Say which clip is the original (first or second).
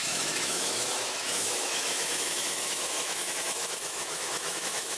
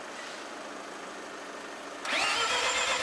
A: second